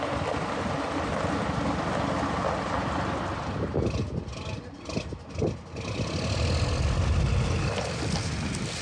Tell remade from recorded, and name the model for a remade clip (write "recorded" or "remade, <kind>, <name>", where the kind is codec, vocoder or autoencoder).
recorded